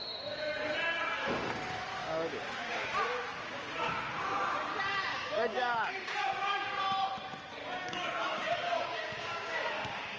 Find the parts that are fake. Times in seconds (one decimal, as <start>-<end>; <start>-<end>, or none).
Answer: 1.9-3.9; 5.1-6.6; 7.6-10.2